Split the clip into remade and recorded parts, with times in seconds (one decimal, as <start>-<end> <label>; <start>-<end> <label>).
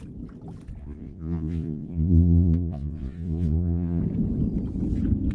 0.0-0.8 recorded; 0.8-4.0 remade; 4.0-5.3 recorded